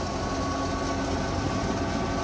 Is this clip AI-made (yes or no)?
no